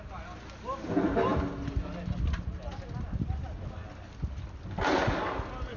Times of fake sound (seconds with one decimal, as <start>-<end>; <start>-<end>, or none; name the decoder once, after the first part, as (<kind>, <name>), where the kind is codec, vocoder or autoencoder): none